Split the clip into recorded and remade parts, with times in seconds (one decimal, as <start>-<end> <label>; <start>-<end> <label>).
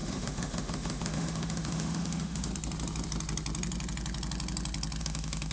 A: 0.0-2.5 remade; 2.5-5.0 recorded; 5.0-5.5 remade